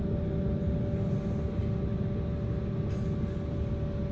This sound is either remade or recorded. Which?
recorded